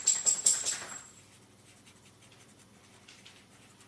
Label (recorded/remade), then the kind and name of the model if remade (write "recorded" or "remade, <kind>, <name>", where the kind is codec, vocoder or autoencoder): remade, vocoder, BigVGAN v2